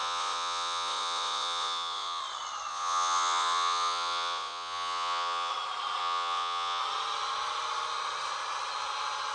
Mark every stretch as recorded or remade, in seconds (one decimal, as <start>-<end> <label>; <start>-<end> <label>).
0.0-2.2 remade; 2.2-2.7 recorded; 2.7-5.5 remade; 5.5-6.0 recorded; 6.0-6.8 remade; 6.8-9.3 recorded

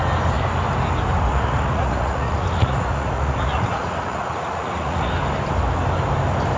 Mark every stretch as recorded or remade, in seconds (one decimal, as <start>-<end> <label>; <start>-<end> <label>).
0.0-1.3 recorded; 1.3-5.1 remade; 5.1-6.6 recorded

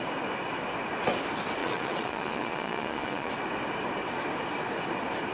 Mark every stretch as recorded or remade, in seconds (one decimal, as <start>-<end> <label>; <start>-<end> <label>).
0.0-1.6 recorded; 1.6-3.3 remade; 3.3-5.3 recorded